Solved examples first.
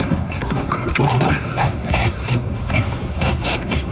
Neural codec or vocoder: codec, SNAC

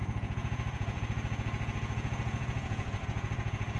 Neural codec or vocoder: vocoder, Vocos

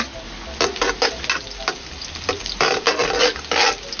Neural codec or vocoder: none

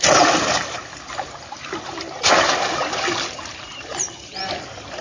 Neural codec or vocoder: none